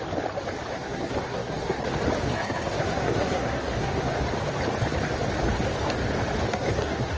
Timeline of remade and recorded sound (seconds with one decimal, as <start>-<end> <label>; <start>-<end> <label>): 0.0-0.7 recorded; 0.7-1.8 remade; 1.8-2.3 recorded; 2.3-4.2 remade; 4.2-6.5 recorded; 6.5-7.2 remade